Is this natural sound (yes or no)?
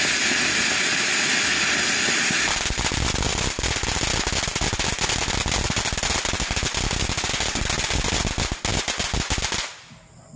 yes